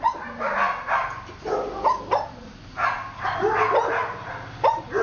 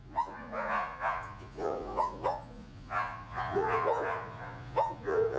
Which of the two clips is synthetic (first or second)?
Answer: second